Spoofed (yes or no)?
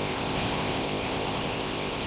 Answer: yes